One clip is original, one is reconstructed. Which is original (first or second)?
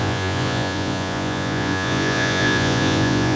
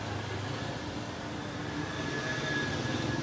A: second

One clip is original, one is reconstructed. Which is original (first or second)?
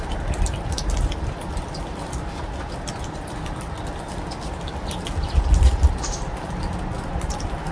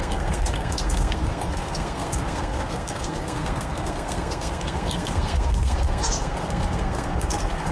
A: first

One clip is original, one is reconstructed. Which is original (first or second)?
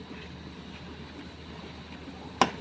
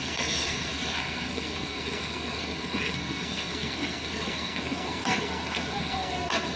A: first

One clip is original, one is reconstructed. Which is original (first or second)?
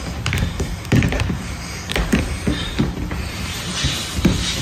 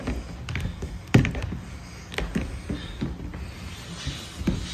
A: second